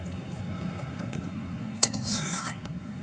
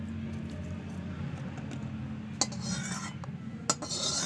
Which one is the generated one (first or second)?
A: first